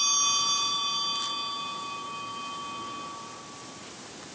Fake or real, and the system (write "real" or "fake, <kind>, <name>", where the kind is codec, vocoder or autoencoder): real